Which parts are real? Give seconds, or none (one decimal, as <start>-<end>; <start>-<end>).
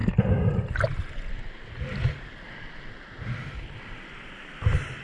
0.0-5.0